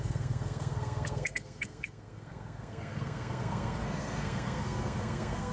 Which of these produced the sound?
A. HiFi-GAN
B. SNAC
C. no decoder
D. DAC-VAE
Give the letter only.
B